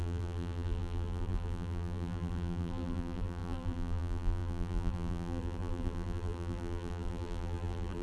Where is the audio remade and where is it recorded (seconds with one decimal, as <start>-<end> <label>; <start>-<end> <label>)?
0.0-8.0 remade